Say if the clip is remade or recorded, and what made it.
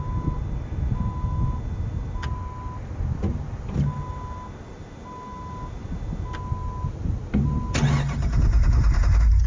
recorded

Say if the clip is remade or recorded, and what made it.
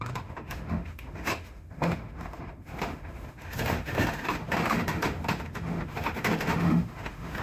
remade, autoencoder, DAC-VAE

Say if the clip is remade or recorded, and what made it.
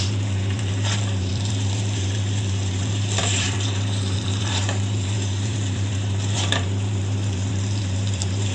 remade, vocoder, BigVGAN v2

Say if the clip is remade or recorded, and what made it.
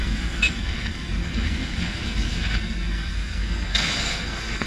remade, codec, SNAC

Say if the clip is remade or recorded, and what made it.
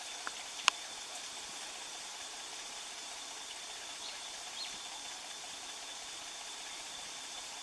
remade, vocoder, BigVGAN v2